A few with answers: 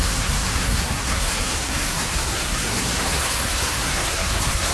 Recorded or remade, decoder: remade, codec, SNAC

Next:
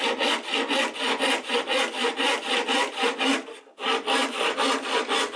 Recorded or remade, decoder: recorded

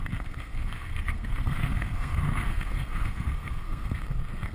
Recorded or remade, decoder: remade, codec, SNAC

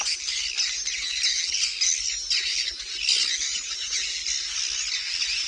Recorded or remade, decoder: recorded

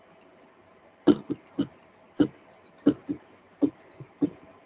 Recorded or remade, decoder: recorded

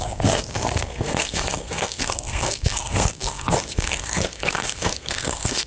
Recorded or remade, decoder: remade, codec, SNAC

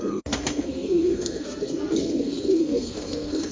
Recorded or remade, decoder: remade, codec, SNAC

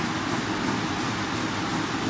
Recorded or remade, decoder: recorded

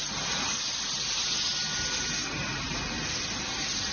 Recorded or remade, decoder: recorded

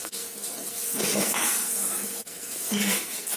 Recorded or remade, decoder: remade, codec, SNAC